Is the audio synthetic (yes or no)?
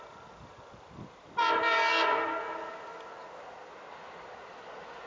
no